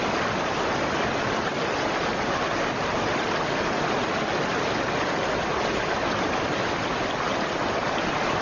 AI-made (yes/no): no